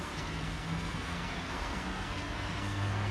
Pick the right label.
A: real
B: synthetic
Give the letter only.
B